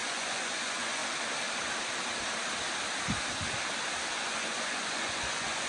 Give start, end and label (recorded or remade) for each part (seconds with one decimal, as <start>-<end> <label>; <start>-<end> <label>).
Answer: 0.0-1.0 remade; 1.0-4.2 recorded; 4.2-5.7 remade